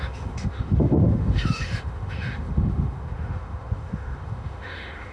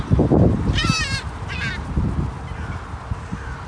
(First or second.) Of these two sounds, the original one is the second